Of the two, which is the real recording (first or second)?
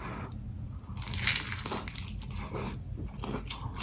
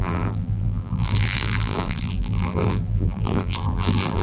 first